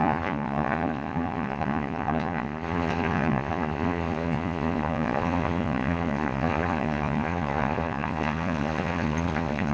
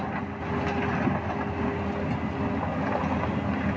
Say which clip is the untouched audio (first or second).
second